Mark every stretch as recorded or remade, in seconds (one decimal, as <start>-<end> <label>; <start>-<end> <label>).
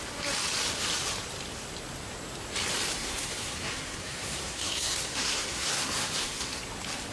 0.0-3.0 recorded; 3.0-6.6 remade; 6.6-7.1 recorded